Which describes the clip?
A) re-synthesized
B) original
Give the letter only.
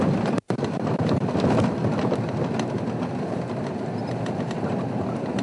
B